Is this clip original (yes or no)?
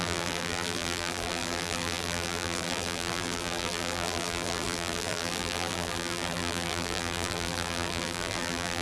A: no